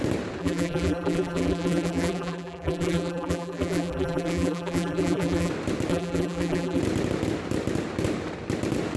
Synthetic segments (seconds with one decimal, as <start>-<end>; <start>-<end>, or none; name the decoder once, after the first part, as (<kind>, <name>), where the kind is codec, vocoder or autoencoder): 0.4-5.5 (vocoder, BigVGAN v2); 5.9-6.8